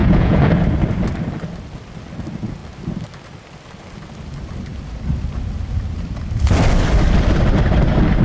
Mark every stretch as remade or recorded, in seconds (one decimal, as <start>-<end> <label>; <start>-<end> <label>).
0.0-0.5 remade; 0.5-8.2 recorded